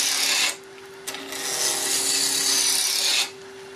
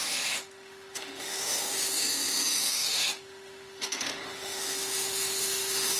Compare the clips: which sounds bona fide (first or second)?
first